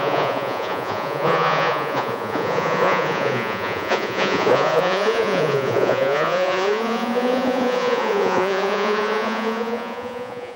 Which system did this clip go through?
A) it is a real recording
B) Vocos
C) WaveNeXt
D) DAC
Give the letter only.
B